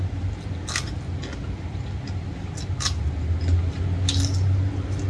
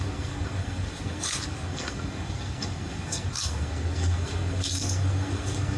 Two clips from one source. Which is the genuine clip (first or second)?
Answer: first